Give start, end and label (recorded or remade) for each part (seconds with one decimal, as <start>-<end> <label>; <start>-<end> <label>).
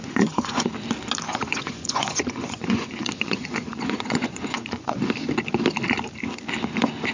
0.0-0.7 remade; 0.7-1.3 recorded; 1.3-5.0 remade; 5.0-7.1 recorded